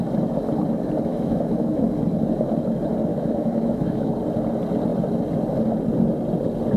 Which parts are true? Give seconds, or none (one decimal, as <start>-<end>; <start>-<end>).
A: 0.0-1.1; 1.8-3.1; 4.1-6.8